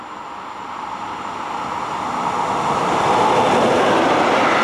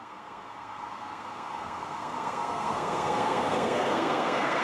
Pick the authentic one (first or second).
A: first